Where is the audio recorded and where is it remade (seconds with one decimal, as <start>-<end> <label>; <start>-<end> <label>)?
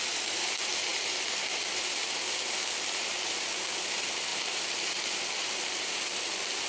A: 0.0-6.7 remade